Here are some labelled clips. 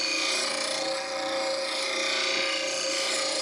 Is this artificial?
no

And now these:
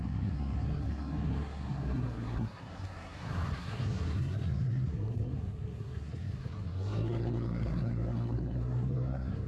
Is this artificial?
yes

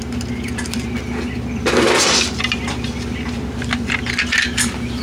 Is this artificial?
no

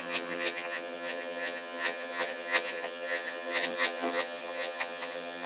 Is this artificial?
yes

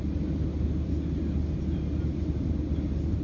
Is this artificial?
no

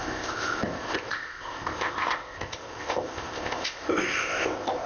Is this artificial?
yes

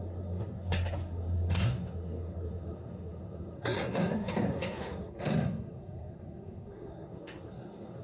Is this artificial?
yes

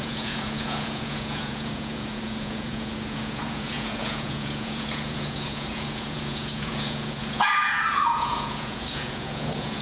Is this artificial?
yes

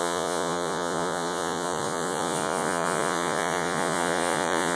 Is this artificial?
yes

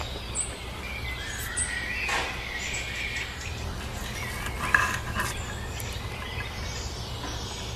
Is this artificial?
no